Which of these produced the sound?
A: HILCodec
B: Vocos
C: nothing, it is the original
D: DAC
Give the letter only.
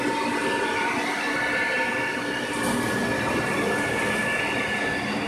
C